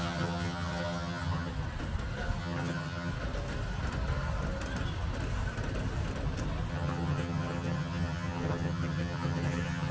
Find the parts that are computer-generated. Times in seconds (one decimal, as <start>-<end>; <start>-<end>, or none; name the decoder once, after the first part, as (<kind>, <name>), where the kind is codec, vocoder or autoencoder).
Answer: 0.0-1.5 (vocoder, HiFi-GAN); 2.4-3.1; 6.7-9.9